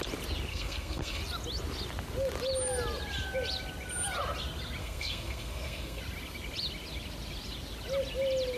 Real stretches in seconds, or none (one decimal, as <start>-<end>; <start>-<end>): 0.0-0.5; 1.2-4.8; 6.0-8.6